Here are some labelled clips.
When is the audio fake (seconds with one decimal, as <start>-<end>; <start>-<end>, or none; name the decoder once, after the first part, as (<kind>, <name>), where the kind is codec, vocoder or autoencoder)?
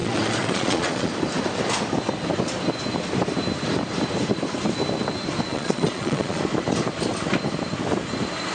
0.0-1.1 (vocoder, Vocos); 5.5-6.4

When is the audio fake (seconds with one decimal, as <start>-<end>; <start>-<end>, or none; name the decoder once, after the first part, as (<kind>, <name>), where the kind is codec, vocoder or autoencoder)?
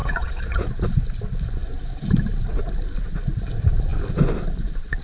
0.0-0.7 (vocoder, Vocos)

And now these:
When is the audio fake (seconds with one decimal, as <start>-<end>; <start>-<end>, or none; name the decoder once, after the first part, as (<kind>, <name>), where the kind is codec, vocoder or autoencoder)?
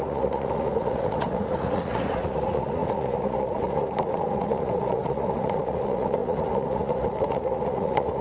0.0-8.2 (vocoder, Vocos)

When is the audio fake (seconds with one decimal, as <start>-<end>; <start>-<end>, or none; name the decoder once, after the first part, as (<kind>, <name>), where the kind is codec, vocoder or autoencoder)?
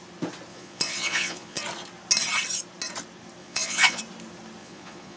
0.5-1.6 (vocoder, Vocos); 3.4-4.0; 4.6-5.2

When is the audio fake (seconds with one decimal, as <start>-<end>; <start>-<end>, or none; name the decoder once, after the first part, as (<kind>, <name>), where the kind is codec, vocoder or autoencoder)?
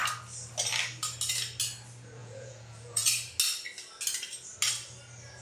2.2-3.1 (vocoder, Vocos)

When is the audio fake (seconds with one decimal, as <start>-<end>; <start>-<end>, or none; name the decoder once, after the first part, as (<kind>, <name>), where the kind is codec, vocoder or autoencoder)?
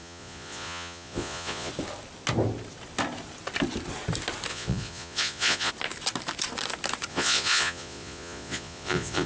0.0-1.7 (vocoder, Vocos); 4.5-5.7; 7.1-9.3